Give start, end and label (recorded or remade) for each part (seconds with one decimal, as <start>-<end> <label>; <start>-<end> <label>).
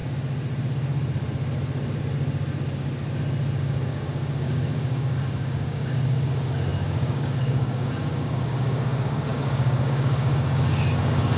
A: 0.0-3.6 recorded; 3.6-11.4 remade